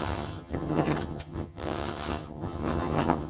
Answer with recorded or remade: remade